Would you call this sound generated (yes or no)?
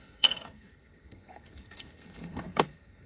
yes